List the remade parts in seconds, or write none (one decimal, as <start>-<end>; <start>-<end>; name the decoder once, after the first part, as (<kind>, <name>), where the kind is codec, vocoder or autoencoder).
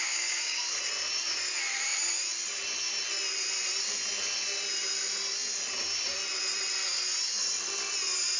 0.0-0.6 (codec, DAC)